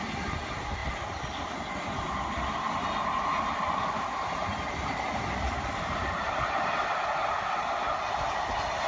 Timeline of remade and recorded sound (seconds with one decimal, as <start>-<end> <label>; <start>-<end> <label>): 0.0-8.9 recorded